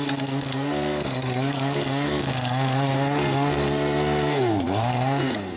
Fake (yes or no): yes